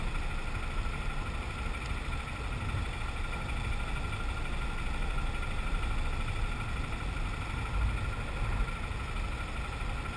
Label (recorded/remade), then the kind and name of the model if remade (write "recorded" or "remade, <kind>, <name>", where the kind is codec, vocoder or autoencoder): recorded